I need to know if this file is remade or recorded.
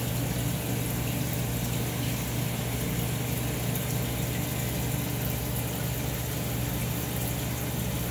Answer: recorded